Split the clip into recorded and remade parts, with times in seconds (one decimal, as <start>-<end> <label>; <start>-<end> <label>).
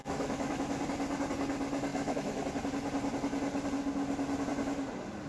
0.0-0.8 remade; 0.8-1.9 recorded; 1.9-2.4 remade; 2.4-5.3 recorded